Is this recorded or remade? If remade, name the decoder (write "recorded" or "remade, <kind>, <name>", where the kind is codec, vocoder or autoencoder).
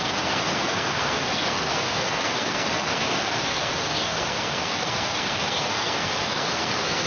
remade, codec, SNAC